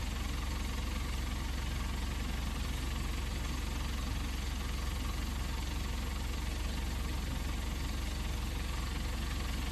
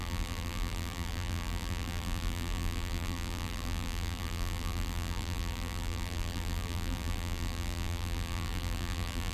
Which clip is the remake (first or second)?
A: second